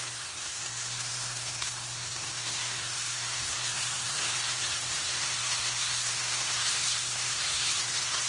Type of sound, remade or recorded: remade